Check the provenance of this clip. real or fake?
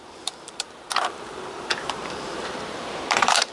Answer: fake